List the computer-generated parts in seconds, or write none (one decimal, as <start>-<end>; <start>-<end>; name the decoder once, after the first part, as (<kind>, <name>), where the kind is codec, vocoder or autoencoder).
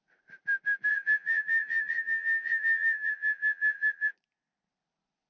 0.9-4.1 (vocoder, HiFi-GAN)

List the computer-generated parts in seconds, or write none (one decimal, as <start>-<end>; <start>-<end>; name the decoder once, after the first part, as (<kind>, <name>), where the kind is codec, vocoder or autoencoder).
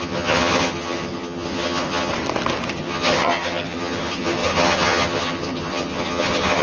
0.0-2.1 (vocoder, HiFi-GAN); 2.7-6.6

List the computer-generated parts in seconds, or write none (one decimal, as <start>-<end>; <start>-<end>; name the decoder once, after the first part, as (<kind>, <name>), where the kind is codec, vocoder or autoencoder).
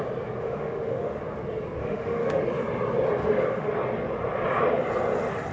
0.4-1.2 (autoencoder, DAC-VAE); 1.8-2.4; 3.2-3.7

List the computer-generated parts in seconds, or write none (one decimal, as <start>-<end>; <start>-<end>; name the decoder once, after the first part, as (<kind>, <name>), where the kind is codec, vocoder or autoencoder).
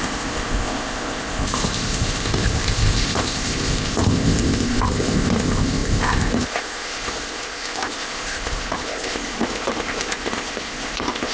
0.0-11.3 (codec, ZipCodec)